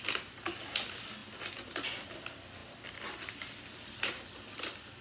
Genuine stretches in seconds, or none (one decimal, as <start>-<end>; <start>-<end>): 0.0-5.0